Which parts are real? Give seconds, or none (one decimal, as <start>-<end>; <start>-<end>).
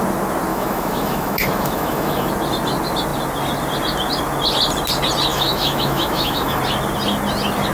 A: 0.0-0.5; 2.3-5.3; 6.6-7.7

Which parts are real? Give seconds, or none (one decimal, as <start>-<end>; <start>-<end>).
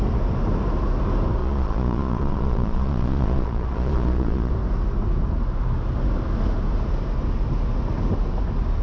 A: 0.0-1.4; 4.5-8.8